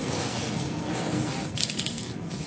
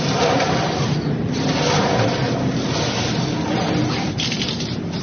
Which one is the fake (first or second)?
first